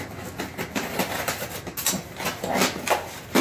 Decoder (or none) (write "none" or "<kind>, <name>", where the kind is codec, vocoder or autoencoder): none